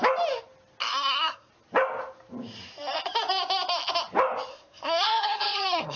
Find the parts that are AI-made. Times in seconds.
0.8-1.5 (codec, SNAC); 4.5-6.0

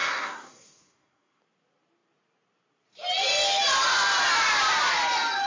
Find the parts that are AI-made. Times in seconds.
0.0-1.4 (codec, SNAC)

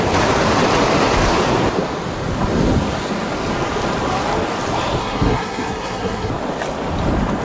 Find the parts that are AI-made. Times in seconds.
5.0-6.3 (codec, SNAC)

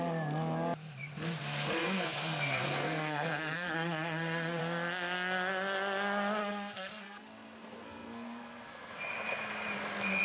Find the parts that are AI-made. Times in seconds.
1.8-4.6 (codec, SNAC); 6.4-9.0